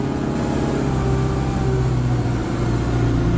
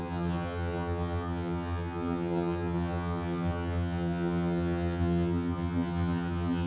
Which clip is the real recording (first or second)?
first